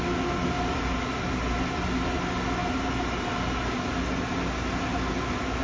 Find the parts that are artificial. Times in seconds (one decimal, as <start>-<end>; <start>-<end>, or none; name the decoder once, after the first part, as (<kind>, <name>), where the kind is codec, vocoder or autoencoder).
none